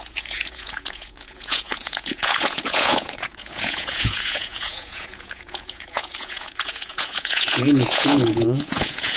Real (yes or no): no